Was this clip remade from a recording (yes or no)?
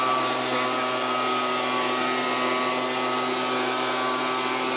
no